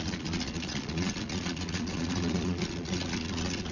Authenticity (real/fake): fake